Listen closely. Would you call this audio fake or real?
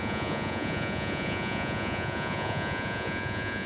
fake